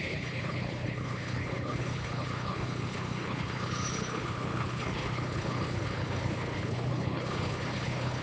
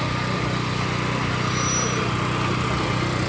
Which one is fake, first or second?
first